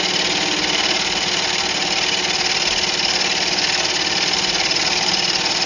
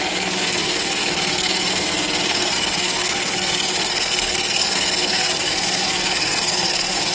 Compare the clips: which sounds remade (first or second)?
second